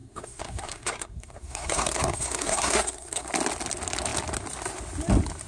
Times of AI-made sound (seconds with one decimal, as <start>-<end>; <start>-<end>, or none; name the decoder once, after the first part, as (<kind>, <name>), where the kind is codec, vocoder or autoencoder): 0.0-3.3 (codec, SNAC)

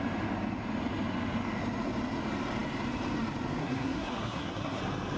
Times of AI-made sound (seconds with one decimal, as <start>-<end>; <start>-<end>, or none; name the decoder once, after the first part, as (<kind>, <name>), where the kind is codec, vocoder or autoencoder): 3.6-4.8 (codec, SNAC)

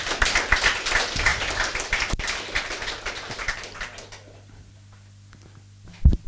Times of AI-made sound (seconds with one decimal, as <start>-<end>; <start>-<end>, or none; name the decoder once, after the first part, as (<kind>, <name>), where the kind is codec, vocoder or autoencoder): none

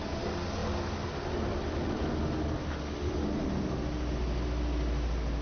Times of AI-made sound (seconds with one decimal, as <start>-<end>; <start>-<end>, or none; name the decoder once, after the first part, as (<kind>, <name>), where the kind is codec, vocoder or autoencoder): none